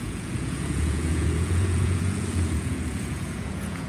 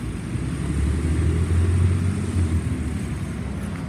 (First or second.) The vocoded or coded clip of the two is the first